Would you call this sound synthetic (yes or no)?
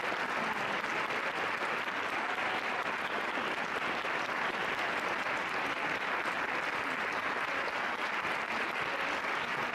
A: no